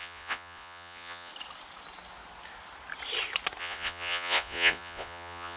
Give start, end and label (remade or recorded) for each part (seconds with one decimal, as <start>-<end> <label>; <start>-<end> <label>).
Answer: 0.0-1.3 remade; 1.3-3.6 recorded; 3.6-5.6 remade